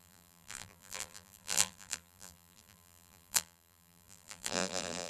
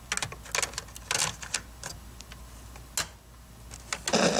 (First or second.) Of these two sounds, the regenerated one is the first